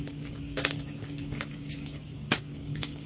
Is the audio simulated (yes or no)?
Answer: yes